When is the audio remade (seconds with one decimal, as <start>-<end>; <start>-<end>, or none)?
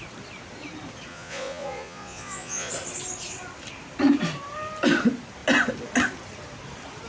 1.1-2.7